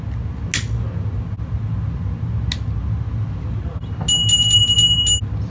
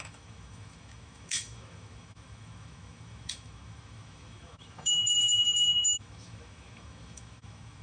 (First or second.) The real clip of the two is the first